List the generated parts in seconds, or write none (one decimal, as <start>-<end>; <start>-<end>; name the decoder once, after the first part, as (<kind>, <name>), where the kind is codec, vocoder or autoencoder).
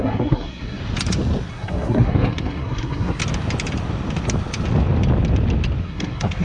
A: 0.0-0.8 (codec, SNAC); 1.5-3.2; 5.8-6.4